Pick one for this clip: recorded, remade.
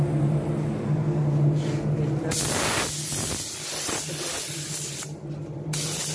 recorded